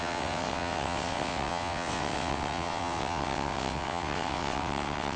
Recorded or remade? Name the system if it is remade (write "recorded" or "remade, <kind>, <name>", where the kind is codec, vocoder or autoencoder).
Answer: remade, vocoder, WaveNeXt